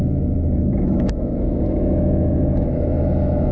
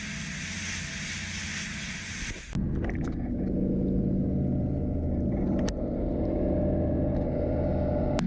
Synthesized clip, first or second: first